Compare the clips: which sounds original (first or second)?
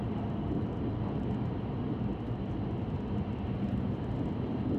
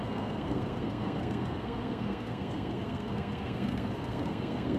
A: first